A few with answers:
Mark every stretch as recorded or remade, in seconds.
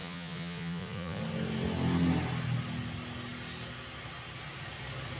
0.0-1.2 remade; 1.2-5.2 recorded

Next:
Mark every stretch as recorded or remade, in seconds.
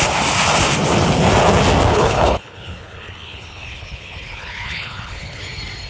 0.0-1.9 recorded; 1.9-5.4 remade; 5.4-5.9 recorded